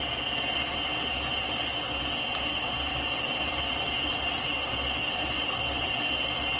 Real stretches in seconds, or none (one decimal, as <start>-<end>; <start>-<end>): 0.0-2.9; 6.1-6.6

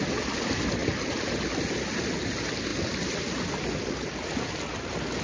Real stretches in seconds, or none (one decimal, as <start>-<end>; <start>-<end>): 0.0-5.2

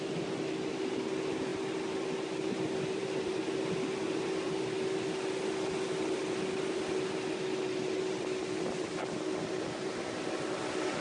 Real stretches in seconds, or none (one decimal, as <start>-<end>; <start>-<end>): 0.0-11.0

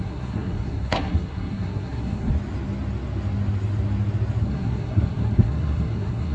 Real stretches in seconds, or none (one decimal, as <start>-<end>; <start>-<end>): 2.3-4.4

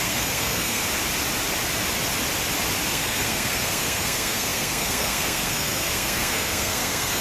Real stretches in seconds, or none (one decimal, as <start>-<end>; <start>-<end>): 0.8-2.9

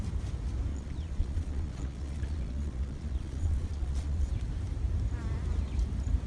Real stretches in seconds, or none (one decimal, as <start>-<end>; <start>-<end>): 0.0-0.7; 4.3-6.3

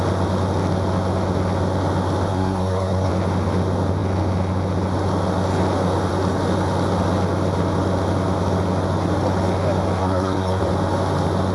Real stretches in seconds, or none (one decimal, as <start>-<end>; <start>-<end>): 0.0-2.3; 3.1-10.0; 10.6-11.5